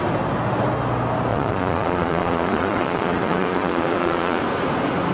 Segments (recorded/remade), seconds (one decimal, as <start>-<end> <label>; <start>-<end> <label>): 0.0-1.3 recorded; 1.3-4.4 remade; 4.4-5.1 recorded